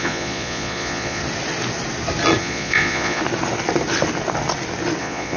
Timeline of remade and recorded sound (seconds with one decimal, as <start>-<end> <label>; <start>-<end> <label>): 0.0-1.2 remade; 1.2-2.4 recorded; 2.4-3.2 remade; 3.2-5.0 recorded; 5.0-5.4 remade